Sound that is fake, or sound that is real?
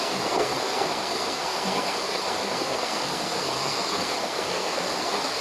fake